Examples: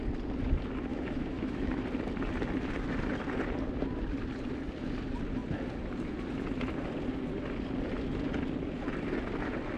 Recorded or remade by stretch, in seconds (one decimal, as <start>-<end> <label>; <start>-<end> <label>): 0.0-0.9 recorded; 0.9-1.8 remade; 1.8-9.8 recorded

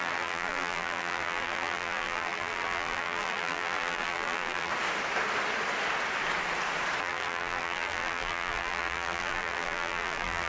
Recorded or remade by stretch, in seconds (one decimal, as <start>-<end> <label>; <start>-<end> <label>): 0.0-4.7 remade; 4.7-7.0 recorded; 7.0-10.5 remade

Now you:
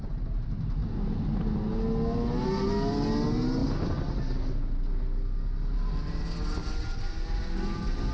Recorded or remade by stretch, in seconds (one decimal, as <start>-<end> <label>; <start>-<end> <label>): 0.0-8.1 recorded

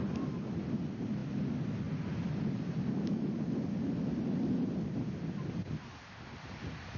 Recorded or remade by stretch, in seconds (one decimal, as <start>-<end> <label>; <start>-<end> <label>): 0.0-7.0 recorded

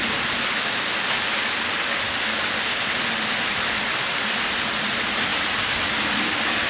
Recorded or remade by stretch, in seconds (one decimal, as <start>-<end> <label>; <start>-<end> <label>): 0.0-6.7 recorded

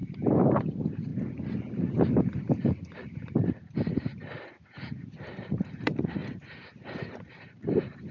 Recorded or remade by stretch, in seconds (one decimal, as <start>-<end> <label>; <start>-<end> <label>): 0.0-1.1 remade; 1.1-1.7 recorded; 1.7-4.1 remade; 4.1-5.3 recorded; 5.3-6.2 remade; 6.2-7.2 recorded; 7.2-8.1 remade

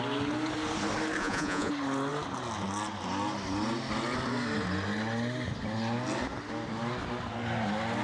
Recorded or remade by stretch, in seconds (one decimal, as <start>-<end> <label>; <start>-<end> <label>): 0.0-1.2 recorded; 1.2-1.7 remade; 1.7-8.0 recorded

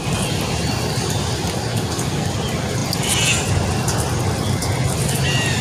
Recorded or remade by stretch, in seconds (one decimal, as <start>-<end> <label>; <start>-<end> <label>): 0.0-1.7 recorded; 1.7-2.3 remade; 2.3-5.6 recorded